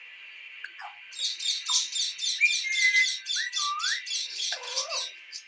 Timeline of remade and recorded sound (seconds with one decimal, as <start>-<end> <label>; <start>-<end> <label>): 0.0-4.2 recorded; 4.2-4.9 remade; 4.9-5.5 recorded